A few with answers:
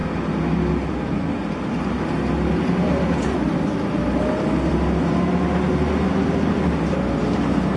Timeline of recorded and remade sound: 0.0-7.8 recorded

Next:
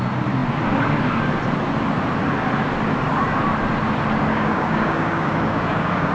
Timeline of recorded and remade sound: 0.0-4.3 recorded; 4.3-6.1 remade

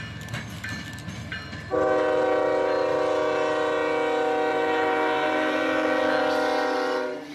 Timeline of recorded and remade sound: 0.0-4.5 recorded; 4.5-6.2 remade; 6.2-7.3 recorded

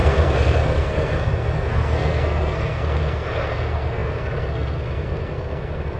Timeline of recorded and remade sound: 0.0-6.0 remade